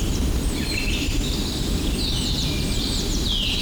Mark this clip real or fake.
real